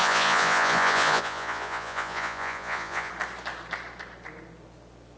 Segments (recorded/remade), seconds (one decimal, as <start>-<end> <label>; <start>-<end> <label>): 0.0-3.1 remade; 3.1-5.2 recorded